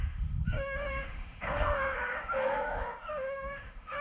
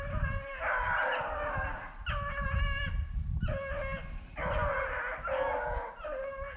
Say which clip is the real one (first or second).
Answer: second